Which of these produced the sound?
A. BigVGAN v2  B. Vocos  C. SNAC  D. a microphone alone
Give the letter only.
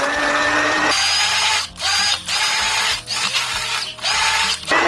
D